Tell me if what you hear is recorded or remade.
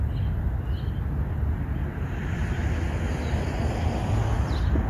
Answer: recorded